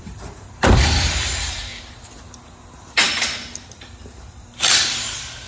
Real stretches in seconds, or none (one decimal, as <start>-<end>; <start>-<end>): 1.7-3.9